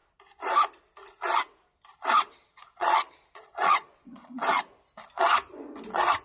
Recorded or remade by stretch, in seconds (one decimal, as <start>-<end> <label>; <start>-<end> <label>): 0.0-2.4 recorded; 2.4-4.4 remade; 4.4-6.2 recorded